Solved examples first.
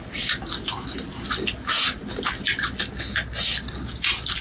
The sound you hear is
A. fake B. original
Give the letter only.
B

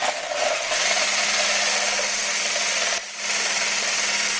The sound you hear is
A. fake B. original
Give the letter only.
B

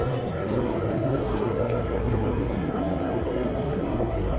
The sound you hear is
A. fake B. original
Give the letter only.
A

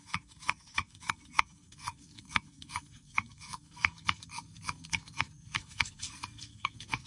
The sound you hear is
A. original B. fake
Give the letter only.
B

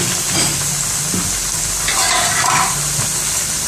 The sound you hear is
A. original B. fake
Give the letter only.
A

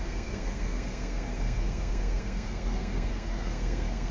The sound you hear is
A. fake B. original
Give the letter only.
A